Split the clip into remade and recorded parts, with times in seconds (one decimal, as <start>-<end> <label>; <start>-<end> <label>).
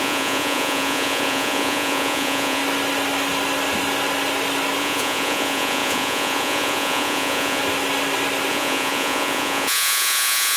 0.0-2.6 remade; 2.6-4.8 recorded; 4.8-7.6 remade; 7.6-8.5 recorded; 8.5-10.6 remade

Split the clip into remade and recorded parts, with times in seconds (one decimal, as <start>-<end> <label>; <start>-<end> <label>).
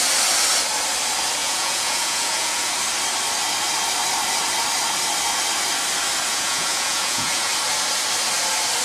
0.0-1.4 recorded; 1.4-2.7 remade; 2.7-6.3 recorded; 6.3-7.5 remade; 7.5-8.8 recorded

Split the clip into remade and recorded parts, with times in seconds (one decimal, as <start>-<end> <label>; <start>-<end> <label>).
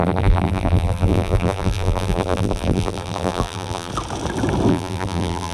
0.0-3.9 remade; 3.9-4.7 recorded; 4.7-5.5 remade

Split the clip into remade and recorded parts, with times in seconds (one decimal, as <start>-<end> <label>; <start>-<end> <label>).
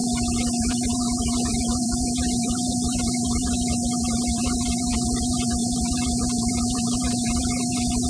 0.0-0.6 recorded; 0.6-8.1 remade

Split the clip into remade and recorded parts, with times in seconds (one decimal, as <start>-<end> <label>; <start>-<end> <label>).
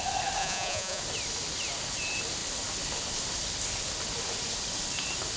0.0-0.4 recorded; 0.4-1.0 remade; 1.0-5.4 recorded